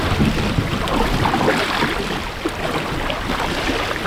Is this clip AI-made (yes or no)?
no